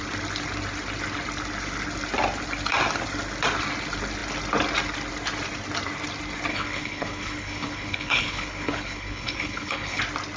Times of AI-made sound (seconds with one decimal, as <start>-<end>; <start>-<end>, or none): 6.5-10.0